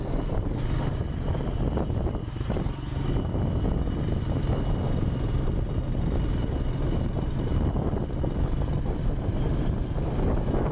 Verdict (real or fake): real